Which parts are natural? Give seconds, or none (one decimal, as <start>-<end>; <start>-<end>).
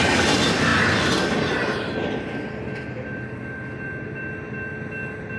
0.0-5.4